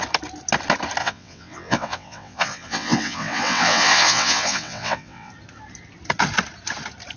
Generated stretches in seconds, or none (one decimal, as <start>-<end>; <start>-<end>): 1.0-5.3